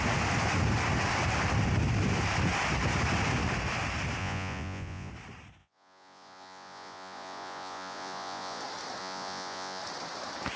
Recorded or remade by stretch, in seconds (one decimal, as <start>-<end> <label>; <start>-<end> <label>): 0.0-4.2 recorded; 4.2-5.1 remade; 5.1-5.6 recorded; 5.6-8.6 remade; 8.6-9.0 recorded; 9.0-9.8 remade; 9.8-10.6 recorded